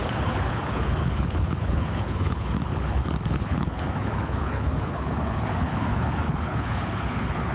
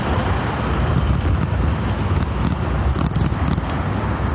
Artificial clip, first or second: first